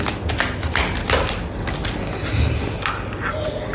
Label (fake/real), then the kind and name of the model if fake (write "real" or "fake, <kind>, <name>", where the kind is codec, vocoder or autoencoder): real